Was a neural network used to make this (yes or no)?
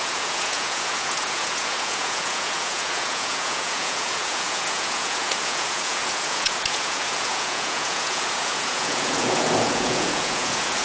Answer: yes